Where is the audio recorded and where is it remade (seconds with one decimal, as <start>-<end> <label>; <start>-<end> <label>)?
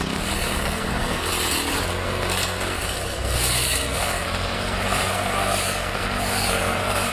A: 0.0-1.3 remade; 1.3-1.9 recorded; 1.9-7.1 remade